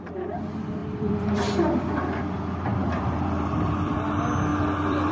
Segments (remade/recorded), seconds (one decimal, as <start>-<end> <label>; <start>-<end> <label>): 0.0-0.8 recorded; 0.8-1.9 remade; 1.9-2.8 recorded; 2.8-3.9 remade; 3.9-4.5 recorded; 4.5-5.1 remade